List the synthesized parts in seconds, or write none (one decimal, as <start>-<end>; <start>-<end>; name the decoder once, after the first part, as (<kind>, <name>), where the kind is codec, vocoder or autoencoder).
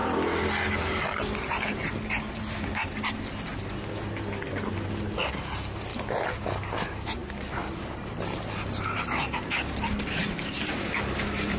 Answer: none